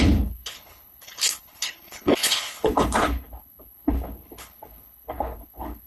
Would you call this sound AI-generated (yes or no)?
yes